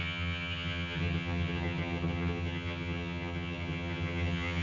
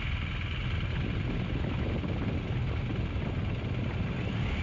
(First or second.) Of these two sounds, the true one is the second